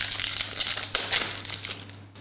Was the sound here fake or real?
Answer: real